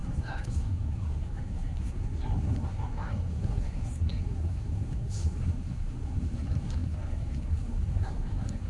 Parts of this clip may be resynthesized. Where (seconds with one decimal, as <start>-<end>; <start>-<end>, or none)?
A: 0.0-8.7